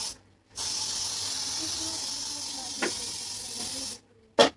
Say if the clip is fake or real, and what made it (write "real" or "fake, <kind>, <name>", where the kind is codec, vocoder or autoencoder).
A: real